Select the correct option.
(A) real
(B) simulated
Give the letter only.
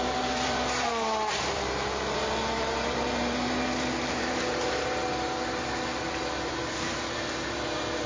B